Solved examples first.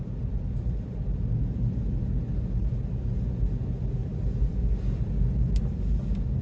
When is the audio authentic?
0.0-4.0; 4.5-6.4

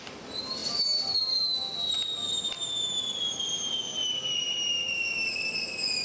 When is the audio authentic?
0.6-4.1

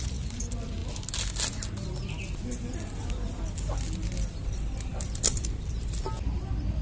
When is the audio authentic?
0.0-4.9; 5.9-6.8

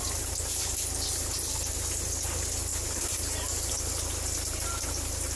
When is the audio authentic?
0.0-2.7; 3.7-5.4

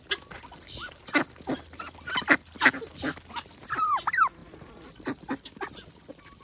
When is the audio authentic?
0.0-4.4; 5.2-6.4

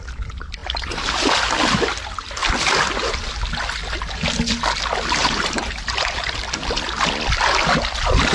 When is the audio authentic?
0.0-0.6; 1.1-5.2; 6.4-8.3